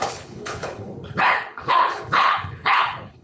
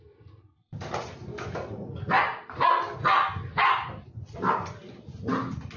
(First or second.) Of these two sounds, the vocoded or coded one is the first